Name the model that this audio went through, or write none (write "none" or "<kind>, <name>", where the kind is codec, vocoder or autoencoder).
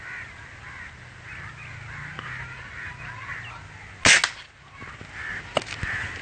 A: none